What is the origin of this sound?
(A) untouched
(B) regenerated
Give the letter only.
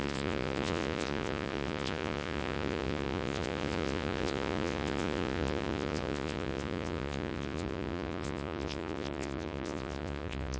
B